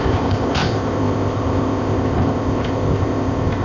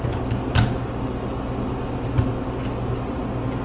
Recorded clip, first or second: second